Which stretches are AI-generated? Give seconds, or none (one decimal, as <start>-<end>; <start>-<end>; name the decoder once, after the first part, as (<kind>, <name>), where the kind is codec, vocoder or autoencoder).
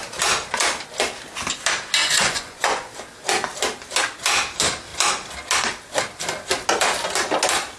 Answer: 2.0-2.9 (vocoder, Vocos)